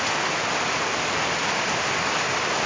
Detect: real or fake real